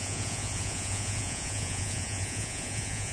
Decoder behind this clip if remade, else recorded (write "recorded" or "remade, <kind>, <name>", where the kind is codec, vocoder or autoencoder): remade, vocoder, Vocos